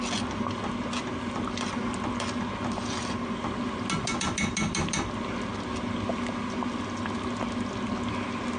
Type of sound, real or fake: real